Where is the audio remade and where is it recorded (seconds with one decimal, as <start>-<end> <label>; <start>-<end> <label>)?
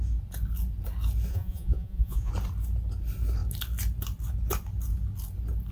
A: 0.0-1.3 recorded; 1.3-2.3 remade; 2.3-5.7 recorded